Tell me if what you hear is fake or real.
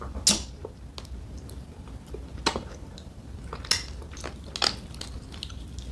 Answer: real